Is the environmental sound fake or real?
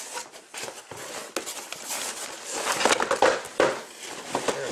real